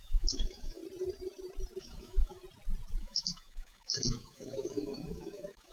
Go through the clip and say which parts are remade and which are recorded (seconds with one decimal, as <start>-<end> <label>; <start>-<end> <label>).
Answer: 0.0-0.8 remade; 0.8-1.8 recorded; 1.8-2.4 remade; 2.4-3.0 recorded; 3.0-5.7 remade